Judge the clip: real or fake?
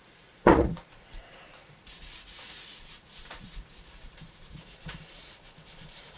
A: fake